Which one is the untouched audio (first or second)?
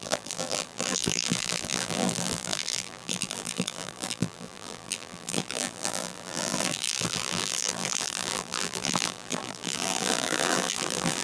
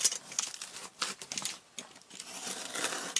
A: second